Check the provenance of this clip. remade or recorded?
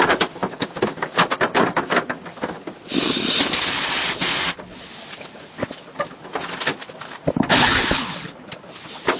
recorded